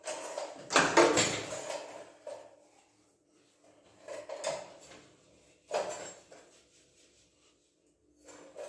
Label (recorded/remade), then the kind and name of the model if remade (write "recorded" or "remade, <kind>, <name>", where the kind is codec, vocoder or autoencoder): recorded